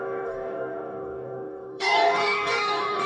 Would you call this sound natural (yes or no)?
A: no